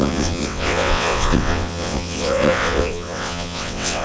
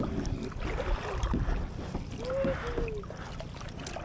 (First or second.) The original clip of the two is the second